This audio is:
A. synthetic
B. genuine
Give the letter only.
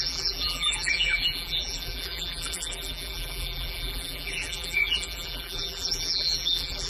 A